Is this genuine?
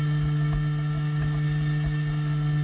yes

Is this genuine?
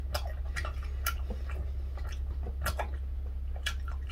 yes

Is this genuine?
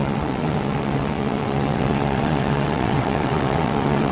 no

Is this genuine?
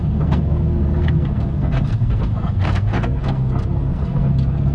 no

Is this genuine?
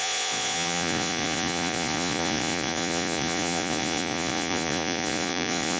no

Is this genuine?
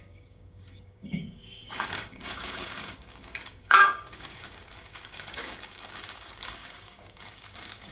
no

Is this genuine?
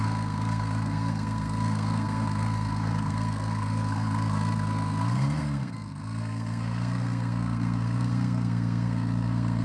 no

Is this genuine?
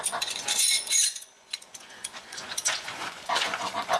no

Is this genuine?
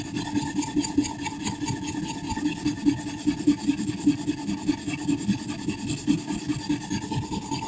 yes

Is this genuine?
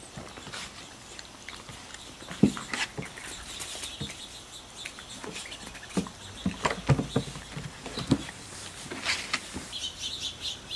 yes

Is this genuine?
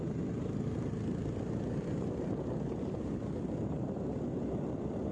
no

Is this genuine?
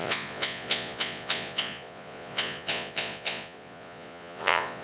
no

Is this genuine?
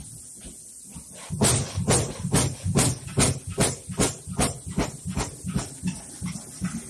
yes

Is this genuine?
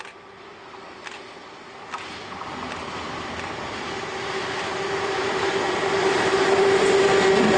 yes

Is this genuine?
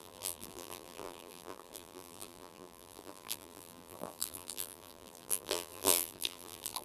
no